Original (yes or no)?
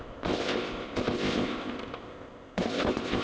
no